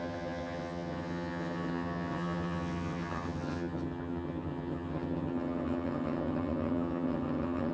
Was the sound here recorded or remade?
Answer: remade